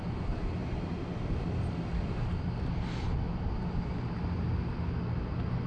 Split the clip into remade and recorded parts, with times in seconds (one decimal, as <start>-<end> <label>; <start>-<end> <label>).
0.0-0.6 recorded; 0.6-1.6 remade; 1.6-5.7 recorded